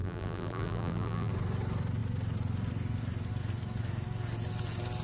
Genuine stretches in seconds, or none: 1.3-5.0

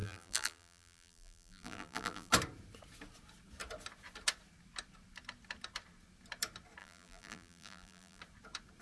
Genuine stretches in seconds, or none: 2.3-6.8; 8.2-8.8

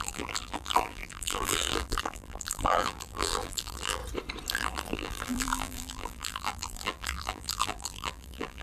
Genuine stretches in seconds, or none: 4.0-4.5